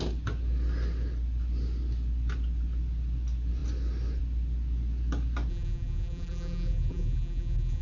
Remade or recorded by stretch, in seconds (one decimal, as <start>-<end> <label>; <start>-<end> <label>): 0.0-5.5 recorded; 5.5-7.8 remade